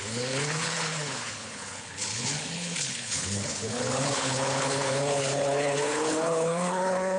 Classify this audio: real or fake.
fake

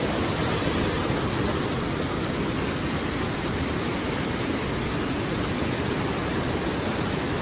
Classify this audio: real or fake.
real